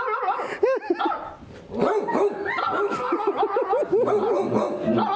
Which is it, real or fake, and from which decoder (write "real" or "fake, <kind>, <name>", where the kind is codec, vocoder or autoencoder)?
real